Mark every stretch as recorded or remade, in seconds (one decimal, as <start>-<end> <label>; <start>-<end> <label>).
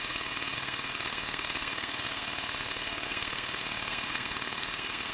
0.0-5.1 remade